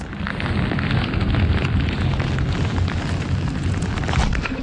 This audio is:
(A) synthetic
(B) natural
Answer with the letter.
B